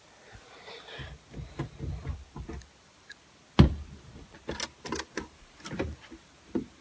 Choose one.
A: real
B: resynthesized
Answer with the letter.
A